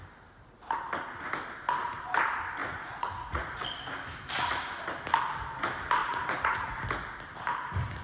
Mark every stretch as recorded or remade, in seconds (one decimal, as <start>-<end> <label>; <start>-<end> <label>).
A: 0.0-2.6 recorded; 2.6-3.6 remade; 3.6-6.0 recorded; 6.0-6.8 remade; 6.8-8.0 recorded